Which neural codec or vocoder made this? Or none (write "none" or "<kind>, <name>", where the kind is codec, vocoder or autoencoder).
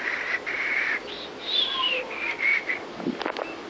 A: none